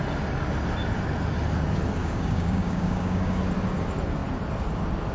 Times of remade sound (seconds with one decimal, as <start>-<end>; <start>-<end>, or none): 2.0-3.4